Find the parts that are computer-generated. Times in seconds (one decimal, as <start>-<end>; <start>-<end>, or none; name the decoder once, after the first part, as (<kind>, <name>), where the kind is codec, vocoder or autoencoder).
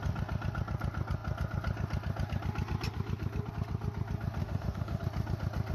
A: 4.4-5.0 (autoencoder, DAC-VAE)